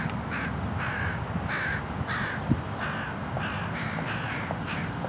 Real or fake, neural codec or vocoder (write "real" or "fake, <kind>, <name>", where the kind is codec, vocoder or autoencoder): real